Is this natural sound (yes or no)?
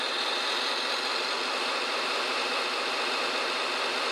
yes